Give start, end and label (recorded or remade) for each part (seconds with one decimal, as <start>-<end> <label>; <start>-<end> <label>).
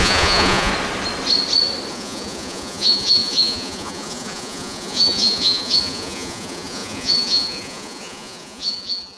0.0-0.7 remade; 0.7-1.9 recorded; 1.9-9.2 remade